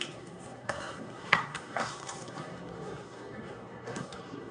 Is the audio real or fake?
fake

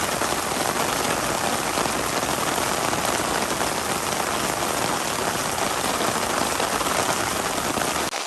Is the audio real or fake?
real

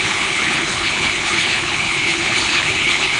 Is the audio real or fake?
fake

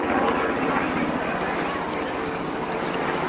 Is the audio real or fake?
real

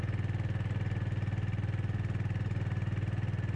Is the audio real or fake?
real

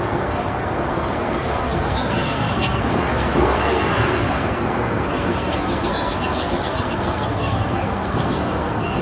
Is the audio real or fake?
fake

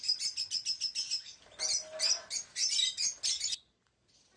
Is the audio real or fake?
real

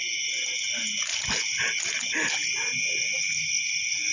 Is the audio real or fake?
real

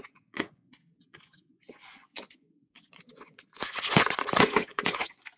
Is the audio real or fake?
fake